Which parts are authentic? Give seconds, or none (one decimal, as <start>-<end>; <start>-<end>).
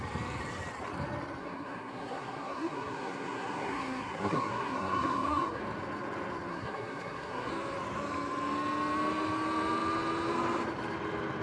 0.0-1.4; 5.6-6.5; 7.5-11.4